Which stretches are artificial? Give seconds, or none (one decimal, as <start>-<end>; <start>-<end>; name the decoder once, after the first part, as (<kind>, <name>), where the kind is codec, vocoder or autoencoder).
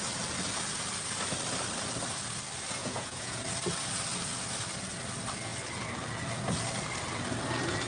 2.8-3.4 (vocoder, Vocos)